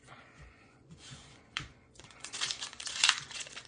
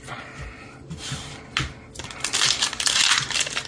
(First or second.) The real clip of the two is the second